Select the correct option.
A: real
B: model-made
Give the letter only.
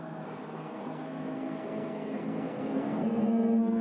B